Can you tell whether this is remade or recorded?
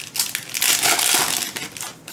recorded